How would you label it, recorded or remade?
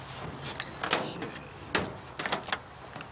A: recorded